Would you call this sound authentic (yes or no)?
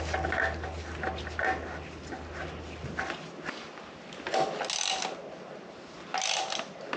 yes